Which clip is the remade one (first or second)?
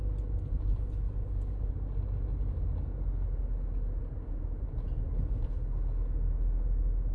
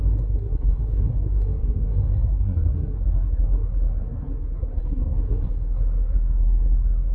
second